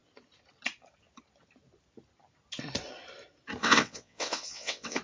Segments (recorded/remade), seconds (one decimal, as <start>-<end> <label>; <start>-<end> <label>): 0.0-3.6 recorded; 3.6-5.0 remade

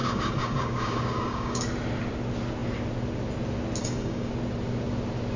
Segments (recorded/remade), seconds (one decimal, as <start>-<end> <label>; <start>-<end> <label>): 0.0-1.6 remade; 1.6-3.8 recorded; 3.8-4.3 remade; 4.3-5.4 recorded